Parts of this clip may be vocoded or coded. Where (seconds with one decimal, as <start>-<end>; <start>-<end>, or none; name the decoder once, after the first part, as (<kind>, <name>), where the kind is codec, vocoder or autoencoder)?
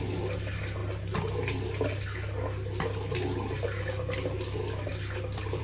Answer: none